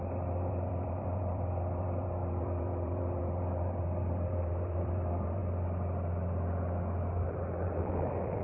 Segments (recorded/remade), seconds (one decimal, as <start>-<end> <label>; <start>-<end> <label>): 0.0-5.4 remade; 5.4-7.2 recorded; 7.2-8.4 remade